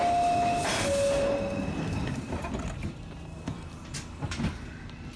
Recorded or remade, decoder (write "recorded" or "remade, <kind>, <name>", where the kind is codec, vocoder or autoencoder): recorded